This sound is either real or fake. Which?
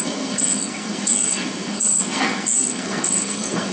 fake